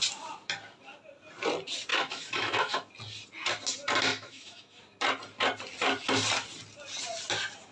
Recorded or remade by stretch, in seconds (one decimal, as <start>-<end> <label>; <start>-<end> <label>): 0.0-1.9 recorded; 1.9-2.9 remade; 2.9-4.1 recorded; 4.1-4.8 remade; 4.8-7.7 recorded